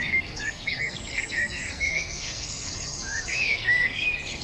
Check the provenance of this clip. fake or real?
fake